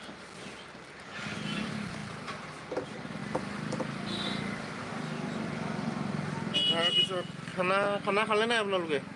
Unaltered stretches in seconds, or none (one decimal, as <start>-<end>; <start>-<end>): 0.0-9.2